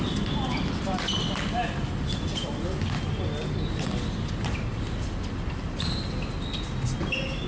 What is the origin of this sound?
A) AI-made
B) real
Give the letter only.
B